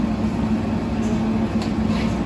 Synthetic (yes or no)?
no